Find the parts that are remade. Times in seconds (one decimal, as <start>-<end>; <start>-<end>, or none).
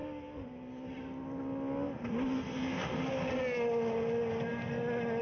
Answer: none